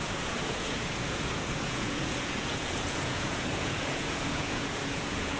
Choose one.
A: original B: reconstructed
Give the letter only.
B